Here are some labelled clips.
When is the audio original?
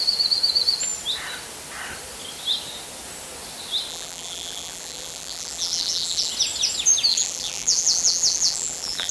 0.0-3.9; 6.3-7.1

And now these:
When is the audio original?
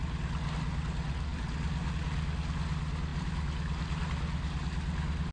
0.0-5.3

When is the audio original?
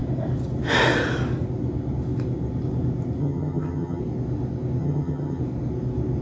0.0-3.2; 4.0-4.8; 5.4-6.2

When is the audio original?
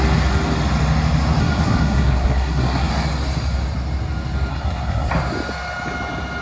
0.0-1.4; 2.9-4.5; 5.1-6.4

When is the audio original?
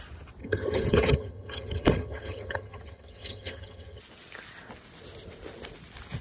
0.0-0.4; 4.0-6.2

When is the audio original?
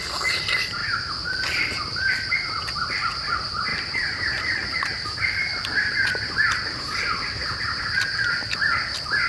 0.0-0.8; 2.1-3.7; 7.8-9.3